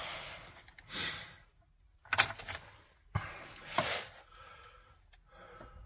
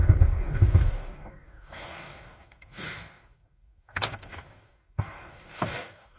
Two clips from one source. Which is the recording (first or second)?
first